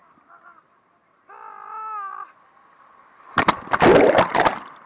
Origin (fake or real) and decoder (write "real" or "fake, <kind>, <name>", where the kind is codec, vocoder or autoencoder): real